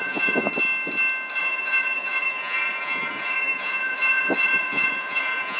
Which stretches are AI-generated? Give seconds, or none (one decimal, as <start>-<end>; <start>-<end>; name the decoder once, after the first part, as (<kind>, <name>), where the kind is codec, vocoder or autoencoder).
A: 0.0-0.5 (vocoder, Vocos); 1.4-5.6